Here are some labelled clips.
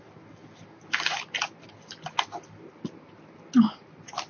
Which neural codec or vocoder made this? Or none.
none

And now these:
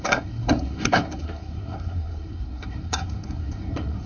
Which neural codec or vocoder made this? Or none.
codec, SNAC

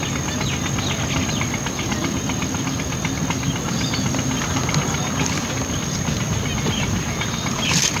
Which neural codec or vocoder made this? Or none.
none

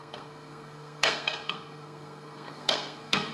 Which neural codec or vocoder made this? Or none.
codec, SNAC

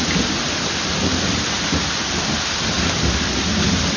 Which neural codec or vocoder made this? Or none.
none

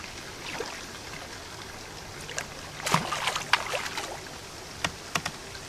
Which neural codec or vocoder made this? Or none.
none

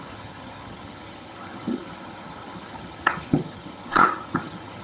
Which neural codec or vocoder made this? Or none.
vocoder, HiFi-GAN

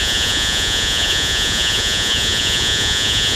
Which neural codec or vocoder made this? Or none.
vocoder, Vocos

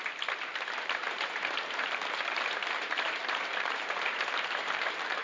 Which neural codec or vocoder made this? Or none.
vocoder, BigVGAN v2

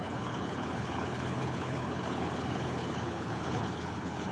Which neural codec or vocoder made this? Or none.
codec, HILCodec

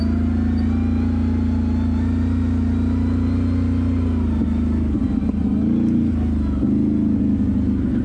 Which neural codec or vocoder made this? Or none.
none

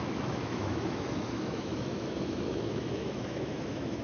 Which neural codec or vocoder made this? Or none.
autoencoder, DAC-VAE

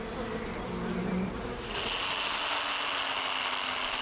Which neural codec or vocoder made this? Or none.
none